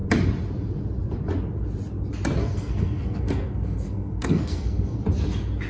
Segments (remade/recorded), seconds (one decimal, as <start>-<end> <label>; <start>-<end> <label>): 0.0-2.4 recorded; 2.4-5.0 remade; 5.0-5.7 recorded

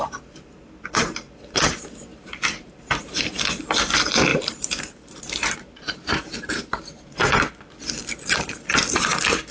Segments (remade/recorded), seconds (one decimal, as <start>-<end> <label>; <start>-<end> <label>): 0.0-2.1 recorded; 2.1-2.9 remade; 2.9-4.3 recorded; 4.3-6.9 remade; 6.9-9.5 recorded